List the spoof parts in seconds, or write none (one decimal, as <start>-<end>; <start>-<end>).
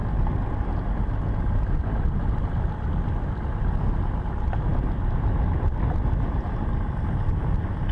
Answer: none